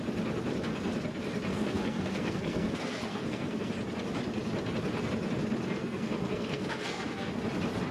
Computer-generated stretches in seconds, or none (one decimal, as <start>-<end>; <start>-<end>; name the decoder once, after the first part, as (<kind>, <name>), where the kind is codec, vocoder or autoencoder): 1.5-3.7 (codec, SNAC); 5.8-7.3